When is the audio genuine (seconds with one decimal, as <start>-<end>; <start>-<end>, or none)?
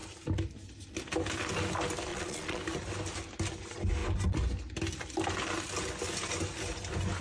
0.0-2.1; 2.6-7.2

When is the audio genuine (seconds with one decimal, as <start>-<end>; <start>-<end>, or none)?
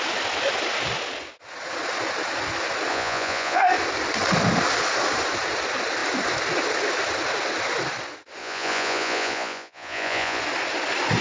0.0-2.9; 3.6-8.4; 10.4-11.2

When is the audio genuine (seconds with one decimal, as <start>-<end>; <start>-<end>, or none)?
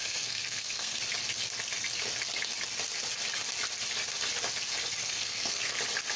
1.0-5.0; 5.8-6.2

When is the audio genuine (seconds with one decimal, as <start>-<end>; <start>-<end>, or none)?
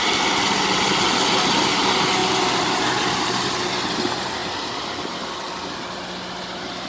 0.0-6.9